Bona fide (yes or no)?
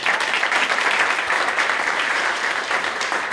no